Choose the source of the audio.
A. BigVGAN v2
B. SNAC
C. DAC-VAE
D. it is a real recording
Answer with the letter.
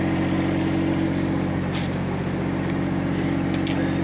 D